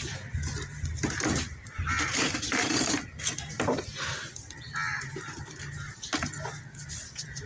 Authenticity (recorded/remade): recorded